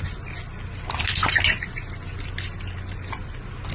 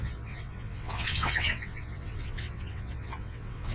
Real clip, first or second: first